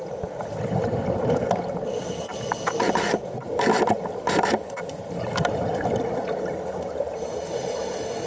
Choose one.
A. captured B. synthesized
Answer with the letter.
A